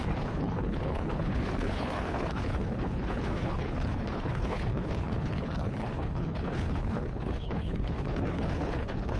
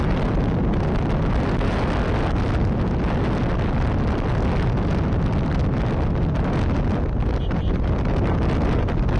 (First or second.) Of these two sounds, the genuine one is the second